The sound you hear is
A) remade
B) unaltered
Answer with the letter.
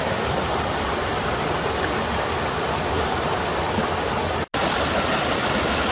B